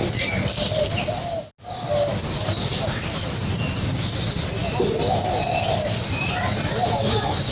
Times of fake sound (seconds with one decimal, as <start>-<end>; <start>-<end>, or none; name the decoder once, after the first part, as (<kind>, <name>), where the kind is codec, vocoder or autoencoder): none